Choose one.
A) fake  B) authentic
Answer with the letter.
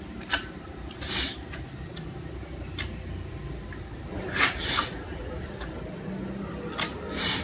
B